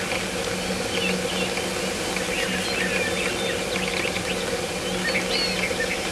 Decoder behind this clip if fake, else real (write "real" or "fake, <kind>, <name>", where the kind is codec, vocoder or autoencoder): real